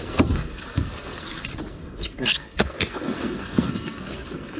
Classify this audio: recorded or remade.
remade